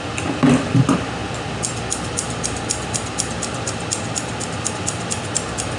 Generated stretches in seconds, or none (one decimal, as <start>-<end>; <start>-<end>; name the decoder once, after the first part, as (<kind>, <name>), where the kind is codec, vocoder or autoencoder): none